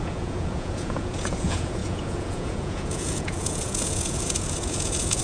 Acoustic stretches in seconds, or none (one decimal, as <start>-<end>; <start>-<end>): none